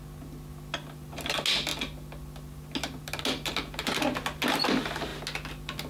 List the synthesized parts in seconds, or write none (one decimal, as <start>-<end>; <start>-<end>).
none